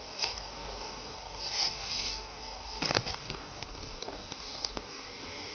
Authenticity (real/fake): fake